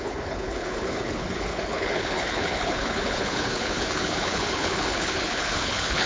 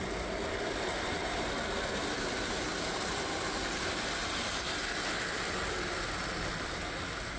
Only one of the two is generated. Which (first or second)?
first